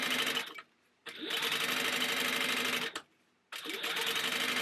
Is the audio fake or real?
real